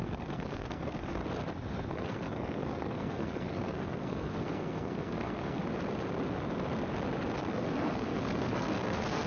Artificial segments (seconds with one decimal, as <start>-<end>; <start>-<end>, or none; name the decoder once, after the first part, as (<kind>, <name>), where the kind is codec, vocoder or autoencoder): 0.0-1.2 (codec, SNAC); 1.9-5.6; 7.5-9.3